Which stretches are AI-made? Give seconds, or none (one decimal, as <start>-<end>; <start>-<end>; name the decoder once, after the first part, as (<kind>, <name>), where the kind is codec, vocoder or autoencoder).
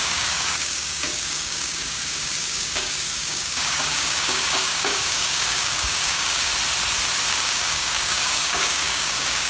0.0-6.5 (codec, DAC); 7.3-9.5